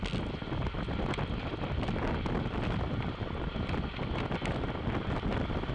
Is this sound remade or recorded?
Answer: recorded